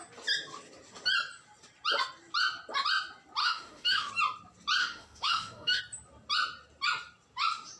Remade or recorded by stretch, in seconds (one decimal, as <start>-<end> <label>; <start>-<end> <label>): 0.0-3.4 recorded; 3.4-4.1 remade; 4.1-4.8 recorded; 4.8-5.8 remade; 5.8-7.8 recorded